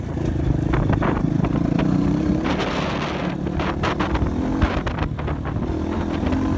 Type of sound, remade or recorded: recorded